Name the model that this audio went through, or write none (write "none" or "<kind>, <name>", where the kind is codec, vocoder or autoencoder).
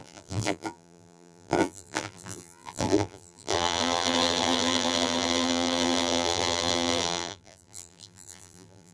vocoder, BigVGAN v2